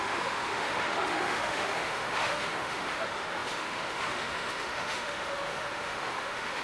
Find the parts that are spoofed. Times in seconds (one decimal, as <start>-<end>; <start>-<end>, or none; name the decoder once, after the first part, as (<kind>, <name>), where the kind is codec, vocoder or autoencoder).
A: 0.0-6.6 (autoencoder, DAC-VAE)